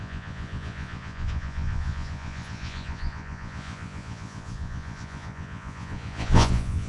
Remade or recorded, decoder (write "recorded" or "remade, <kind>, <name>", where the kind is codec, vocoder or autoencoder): remade, vocoder, Vocos